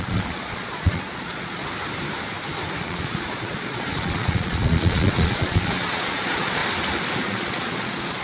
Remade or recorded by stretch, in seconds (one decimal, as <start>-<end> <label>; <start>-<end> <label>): 0.0-1.6 remade; 1.6-2.8 recorded; 2.8-6.6 remade; 6.6-7.2 recorded; 7.2-8.2 remade